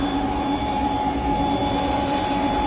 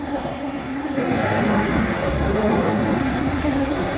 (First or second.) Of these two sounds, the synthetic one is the second